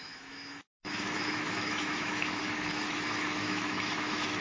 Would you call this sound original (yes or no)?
no